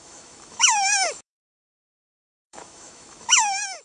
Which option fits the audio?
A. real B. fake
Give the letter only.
B